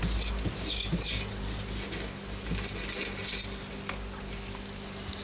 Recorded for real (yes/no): yes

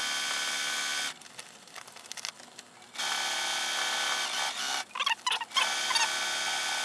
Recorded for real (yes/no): yes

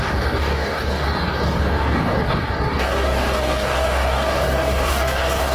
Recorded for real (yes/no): no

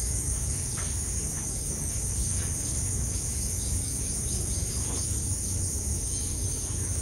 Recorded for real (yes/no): no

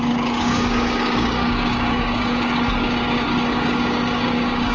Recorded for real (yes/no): no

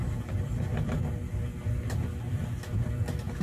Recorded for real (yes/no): yes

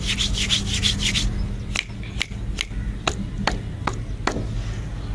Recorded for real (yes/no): yes